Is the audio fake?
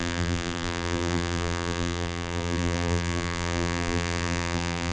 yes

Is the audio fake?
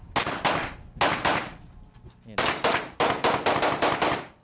no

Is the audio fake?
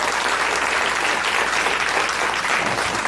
no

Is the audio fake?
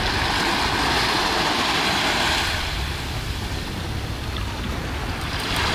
no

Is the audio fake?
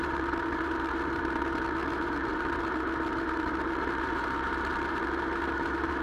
yes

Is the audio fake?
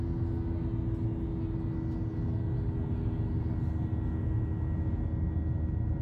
no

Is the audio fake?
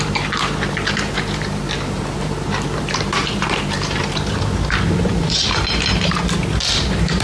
yes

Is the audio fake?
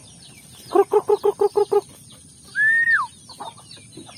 no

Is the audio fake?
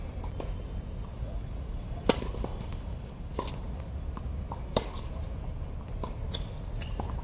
no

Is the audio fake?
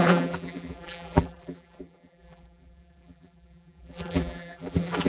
yes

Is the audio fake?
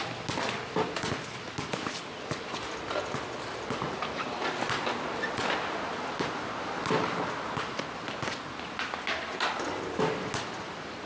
no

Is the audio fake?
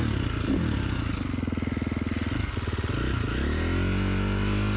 no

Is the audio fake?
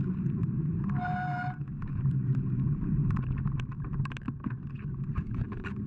yes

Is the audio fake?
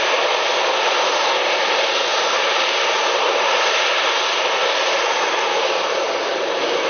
yes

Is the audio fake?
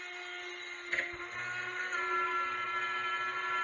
no